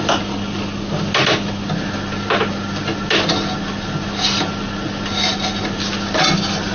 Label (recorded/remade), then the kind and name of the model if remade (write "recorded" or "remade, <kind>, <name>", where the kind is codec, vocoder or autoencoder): recorded